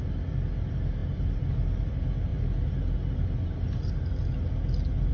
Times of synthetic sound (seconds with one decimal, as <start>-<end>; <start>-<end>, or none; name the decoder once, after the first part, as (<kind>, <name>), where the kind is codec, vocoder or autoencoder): none